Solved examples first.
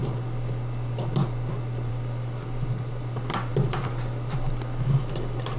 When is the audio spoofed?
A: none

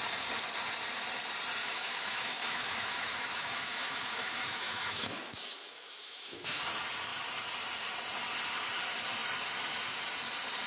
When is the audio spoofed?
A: 1.6-6.6 (autoencoder, DAC-VAE)